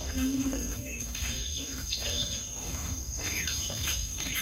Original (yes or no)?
no